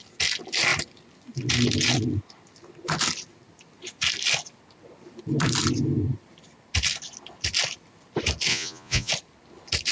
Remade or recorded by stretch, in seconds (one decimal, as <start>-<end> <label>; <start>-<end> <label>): 0.0-8.5 recorded; 8.5-9.1 remade; 9.1-9.9 recorded